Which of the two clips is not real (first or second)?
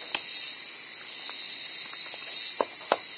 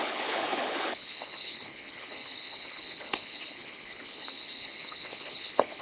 second